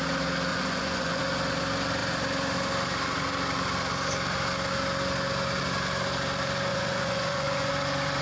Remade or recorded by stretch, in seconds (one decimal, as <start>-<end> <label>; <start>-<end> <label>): 0.0-0.5 recorded; 0.5-1.2 remade; 1.2-6.7 recorded; 6.7-7.7 remade; 7.7-8.2 recorded